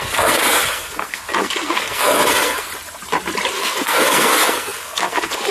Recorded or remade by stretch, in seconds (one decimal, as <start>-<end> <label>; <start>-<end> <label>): 0.0-2.7 remade; 2.7-3.5 recorded; 3.5-5.5 remade